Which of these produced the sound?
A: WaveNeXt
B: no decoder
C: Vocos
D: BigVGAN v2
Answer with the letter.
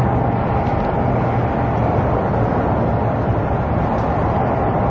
B